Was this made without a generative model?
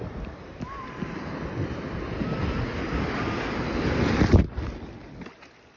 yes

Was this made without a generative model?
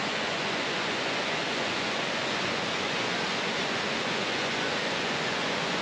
no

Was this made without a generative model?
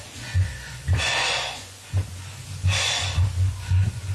no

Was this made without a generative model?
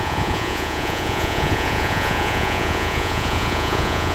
no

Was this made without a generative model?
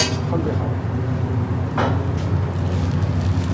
yes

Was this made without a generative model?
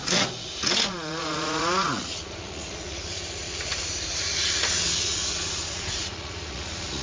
no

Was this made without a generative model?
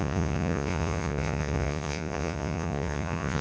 no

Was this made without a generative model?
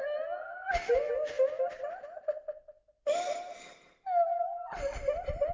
yes